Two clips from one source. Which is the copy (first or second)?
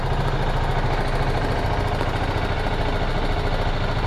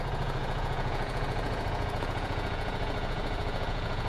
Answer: second